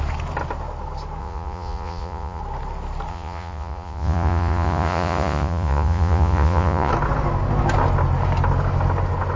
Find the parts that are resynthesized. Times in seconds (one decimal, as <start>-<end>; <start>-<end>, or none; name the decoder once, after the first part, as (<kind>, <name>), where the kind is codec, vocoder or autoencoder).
1.2-2.4 (vocoder, Vocos); 3.1-6.9